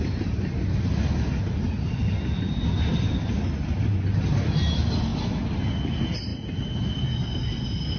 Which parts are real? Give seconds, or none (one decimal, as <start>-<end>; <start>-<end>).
0.0-8.0